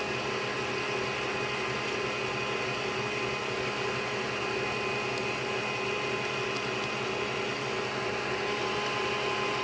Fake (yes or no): no